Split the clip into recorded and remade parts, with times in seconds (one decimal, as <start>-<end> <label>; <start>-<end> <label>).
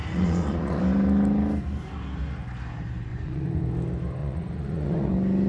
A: 0.0-0.8 remade; 0.8-3.1 recorded; 3.1-3.6 remade; 3.6-4.2 recorded; 4.2-5.1 remade; 5.1-5.5 recorded